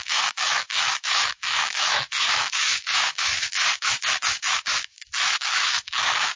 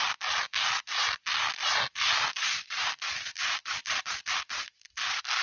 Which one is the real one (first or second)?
second